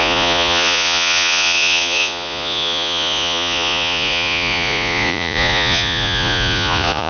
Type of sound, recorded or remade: remade